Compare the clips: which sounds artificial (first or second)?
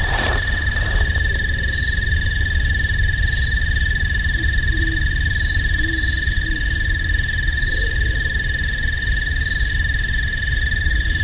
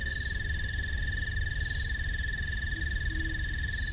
first